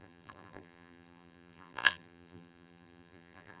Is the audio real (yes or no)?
no